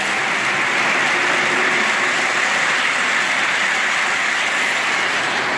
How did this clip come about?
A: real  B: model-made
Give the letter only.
A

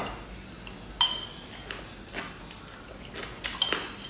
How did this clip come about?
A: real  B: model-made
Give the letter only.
A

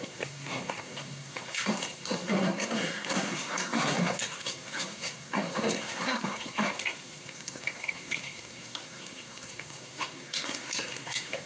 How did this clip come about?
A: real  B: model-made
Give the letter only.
B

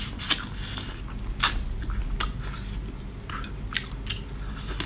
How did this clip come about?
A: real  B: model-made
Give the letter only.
A